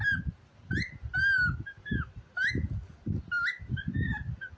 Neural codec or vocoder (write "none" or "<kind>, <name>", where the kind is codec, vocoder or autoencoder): none